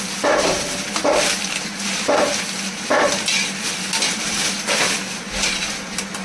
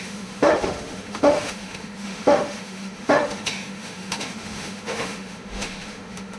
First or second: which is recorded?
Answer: first